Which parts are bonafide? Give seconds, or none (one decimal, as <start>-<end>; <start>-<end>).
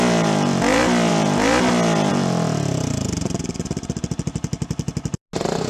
0.0-5.7